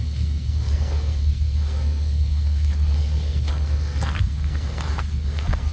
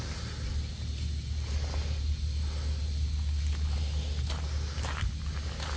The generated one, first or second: first